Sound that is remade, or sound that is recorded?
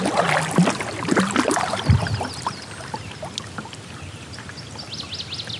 recorded